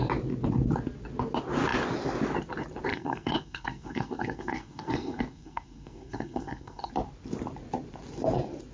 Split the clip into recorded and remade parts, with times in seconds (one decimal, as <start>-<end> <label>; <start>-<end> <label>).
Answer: 0.0-2.9 recorded; 2.9-6.9 remade; 6.9-8.7 recorded